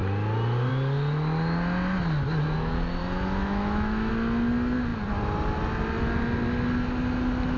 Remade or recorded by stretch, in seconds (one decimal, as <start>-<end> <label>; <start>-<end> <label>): 0.0-3.0 recorded; 3.0-4.1 remade; 4.1-7.6 recorded